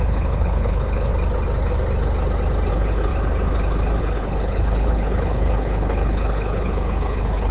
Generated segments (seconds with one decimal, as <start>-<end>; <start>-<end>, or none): 0.0-1.1; 2.7-3.1; 4.0-7.5